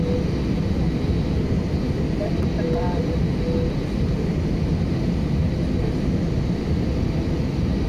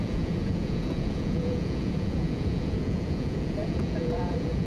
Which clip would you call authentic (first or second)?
first